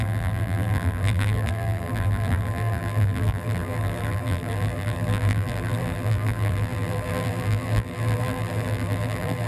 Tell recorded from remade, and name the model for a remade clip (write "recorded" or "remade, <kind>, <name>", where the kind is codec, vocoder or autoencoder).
remade, vocoder, BigVGAN v2